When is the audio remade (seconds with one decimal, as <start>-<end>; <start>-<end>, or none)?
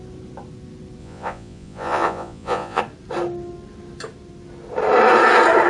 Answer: 1.0-2.8